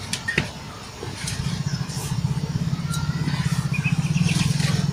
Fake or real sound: real